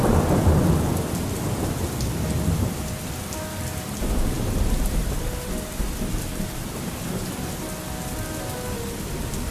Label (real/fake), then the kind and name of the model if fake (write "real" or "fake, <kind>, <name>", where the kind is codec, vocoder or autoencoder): real